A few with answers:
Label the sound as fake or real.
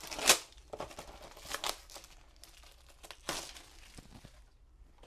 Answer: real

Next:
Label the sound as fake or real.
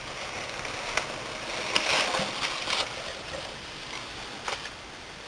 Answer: real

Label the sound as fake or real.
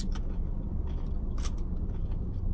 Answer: fake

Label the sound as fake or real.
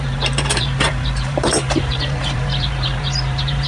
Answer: fake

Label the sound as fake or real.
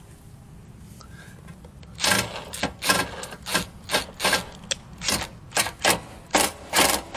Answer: real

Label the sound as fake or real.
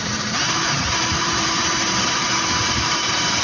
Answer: fake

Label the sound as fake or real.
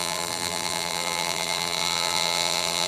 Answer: fake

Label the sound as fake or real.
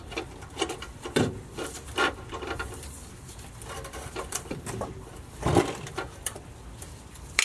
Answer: fake